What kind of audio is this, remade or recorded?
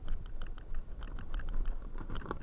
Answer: recorded